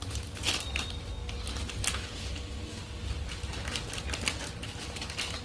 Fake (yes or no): no